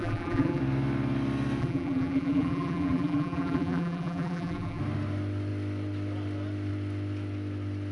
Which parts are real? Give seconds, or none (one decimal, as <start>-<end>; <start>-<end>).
0.6-1.6; 4.8-7.9